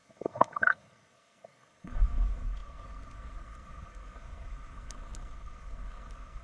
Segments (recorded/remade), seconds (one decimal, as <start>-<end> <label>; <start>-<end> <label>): 0.0-6.4 remade